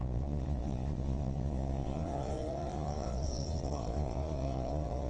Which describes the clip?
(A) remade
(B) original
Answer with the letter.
A